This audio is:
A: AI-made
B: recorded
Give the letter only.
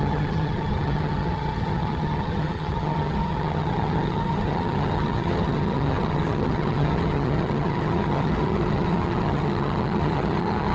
A